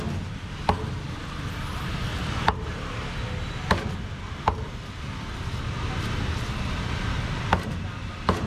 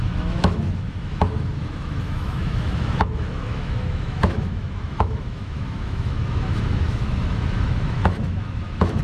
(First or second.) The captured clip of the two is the first